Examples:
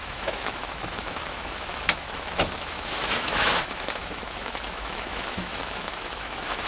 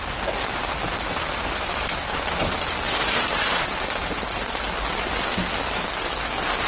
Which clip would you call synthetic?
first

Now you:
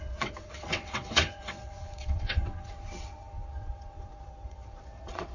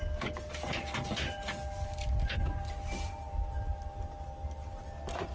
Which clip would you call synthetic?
first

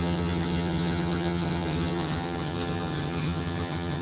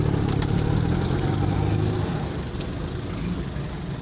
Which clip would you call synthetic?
first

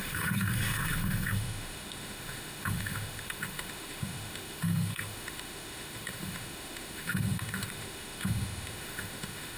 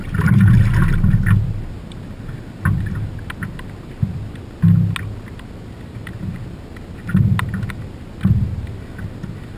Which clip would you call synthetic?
first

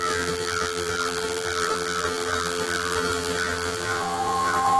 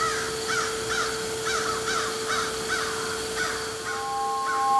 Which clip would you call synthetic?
first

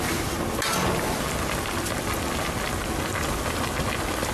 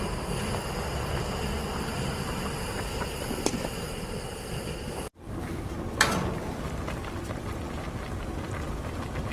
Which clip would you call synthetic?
second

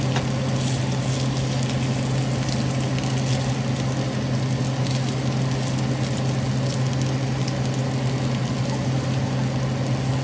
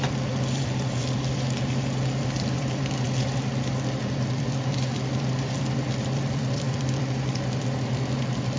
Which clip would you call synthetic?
second